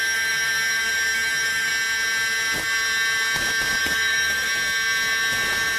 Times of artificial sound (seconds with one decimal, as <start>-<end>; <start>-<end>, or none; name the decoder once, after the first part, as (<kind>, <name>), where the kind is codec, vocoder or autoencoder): 0.0-1.7 (autoencoder, DAC-VAE); 3.8-4.5